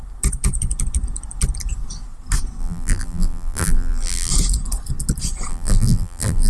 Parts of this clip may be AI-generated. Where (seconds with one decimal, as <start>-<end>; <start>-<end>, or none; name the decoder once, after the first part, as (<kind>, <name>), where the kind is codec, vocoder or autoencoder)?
2.6-4.3 (vocoder, BigVGAN v2); 5.5-6.5